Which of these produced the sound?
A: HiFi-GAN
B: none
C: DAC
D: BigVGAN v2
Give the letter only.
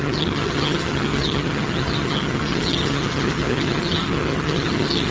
A